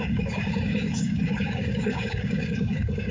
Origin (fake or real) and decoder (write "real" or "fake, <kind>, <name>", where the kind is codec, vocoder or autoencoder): fake, codec, DAC